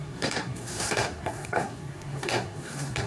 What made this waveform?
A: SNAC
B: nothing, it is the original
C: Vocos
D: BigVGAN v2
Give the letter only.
A